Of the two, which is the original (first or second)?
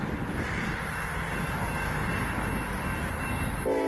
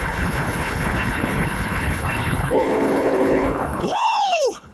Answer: first